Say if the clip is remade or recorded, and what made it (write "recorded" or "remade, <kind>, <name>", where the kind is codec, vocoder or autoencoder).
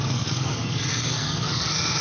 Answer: remade, codec, SNAC